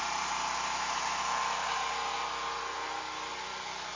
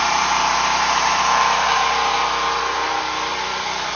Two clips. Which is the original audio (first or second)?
first